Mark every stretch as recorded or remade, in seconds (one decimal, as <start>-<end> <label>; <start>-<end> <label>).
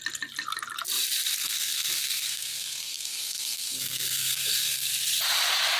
0.0-1.4 recorded; 1.4-4.9 remade; 4.9-5.8 recorded